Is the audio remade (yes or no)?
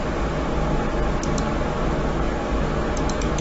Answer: no